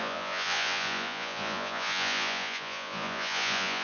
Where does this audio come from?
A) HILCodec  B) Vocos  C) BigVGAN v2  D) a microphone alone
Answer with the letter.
B